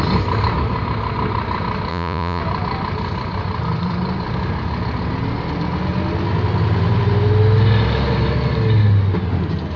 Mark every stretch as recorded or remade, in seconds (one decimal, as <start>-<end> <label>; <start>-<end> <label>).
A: 0.0-1.9 recorded; 1.9-2.4 remade; 2.4-9.8 recorded